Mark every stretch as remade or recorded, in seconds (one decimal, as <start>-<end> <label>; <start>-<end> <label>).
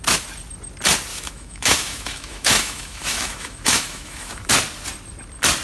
0.0-1.1 recorded; 1.1-4.5 remade; 4.5-5.6 recorded